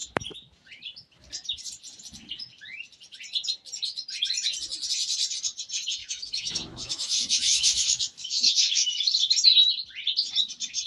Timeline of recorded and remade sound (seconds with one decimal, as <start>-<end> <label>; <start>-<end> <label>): 0.0-6.0 recorded; 6.0-9.1 remade; 9.1-10.9 recorded